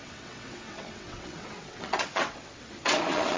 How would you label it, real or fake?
fake